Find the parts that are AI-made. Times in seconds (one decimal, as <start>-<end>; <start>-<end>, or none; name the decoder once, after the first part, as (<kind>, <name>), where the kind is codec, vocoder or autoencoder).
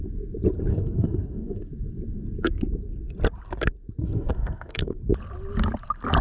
0.7-1.7 (codec, SNAC); 4.4-5.0